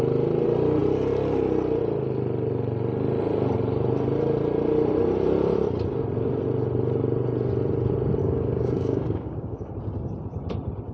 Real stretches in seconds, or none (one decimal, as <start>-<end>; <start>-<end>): 0.0-8.2; 9.7-10.9